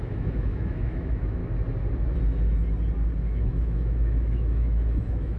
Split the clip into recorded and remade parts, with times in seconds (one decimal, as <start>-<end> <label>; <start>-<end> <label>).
0.0-1.4 remade; 1.4-3.2 recorded; 3.2-5.4 remade